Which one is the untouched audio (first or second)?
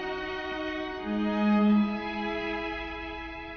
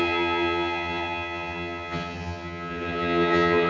first